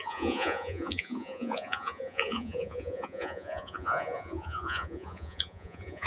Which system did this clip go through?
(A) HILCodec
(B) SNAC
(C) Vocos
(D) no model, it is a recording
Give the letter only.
C